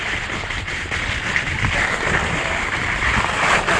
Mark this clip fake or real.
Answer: real